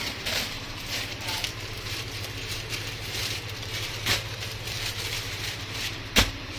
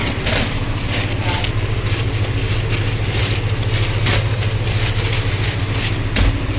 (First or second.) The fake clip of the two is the first